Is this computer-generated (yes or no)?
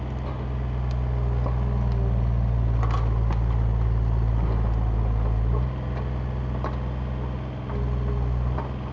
no